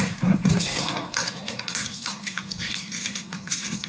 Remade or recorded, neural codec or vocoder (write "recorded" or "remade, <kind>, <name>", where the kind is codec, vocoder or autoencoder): remade, codec, SNAC